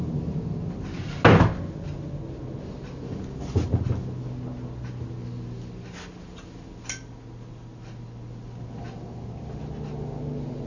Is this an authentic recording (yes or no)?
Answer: yes